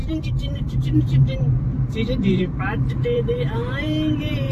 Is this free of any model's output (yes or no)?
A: no